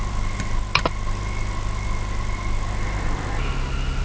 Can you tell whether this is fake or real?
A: real